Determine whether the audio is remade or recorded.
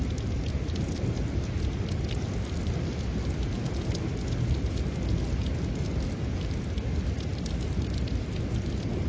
recorded